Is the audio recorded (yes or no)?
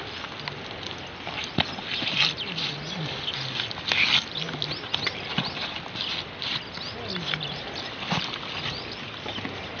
yes